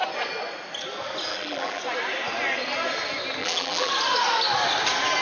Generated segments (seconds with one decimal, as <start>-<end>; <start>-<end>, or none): 1.3-1.8; 3.4-3.9